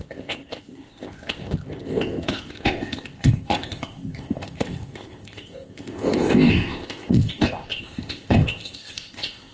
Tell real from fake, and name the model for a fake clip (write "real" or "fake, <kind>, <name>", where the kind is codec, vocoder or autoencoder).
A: fake, codec, ZipCodec